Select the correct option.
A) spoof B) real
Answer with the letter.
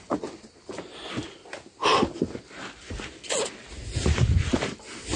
B